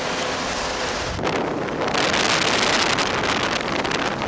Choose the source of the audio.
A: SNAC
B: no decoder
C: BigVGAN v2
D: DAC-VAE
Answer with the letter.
B